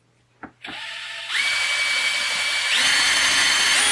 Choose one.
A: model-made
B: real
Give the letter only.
B